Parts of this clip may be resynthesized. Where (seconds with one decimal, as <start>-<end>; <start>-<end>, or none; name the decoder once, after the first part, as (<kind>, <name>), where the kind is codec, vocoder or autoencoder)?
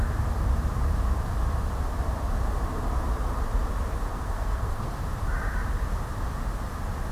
4.1-4.9 (codec, SNAC)